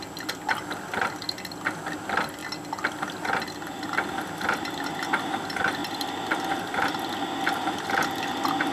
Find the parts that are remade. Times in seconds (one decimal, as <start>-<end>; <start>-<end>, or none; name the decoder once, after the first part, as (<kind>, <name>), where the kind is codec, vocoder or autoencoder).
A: none